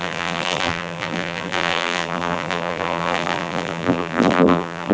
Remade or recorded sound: remade